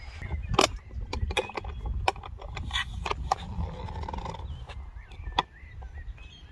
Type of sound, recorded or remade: recorded